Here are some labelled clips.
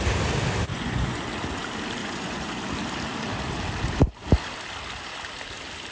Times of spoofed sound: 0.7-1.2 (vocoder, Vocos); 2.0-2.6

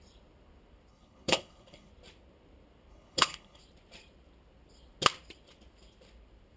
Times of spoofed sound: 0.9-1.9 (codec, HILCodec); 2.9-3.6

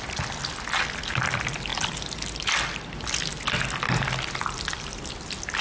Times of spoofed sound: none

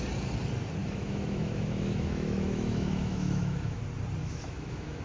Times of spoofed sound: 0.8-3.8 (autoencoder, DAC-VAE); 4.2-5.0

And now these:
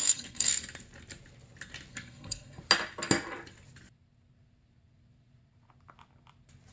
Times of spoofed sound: 0.0-0.5 (codec, SNAC); 1.9-2.6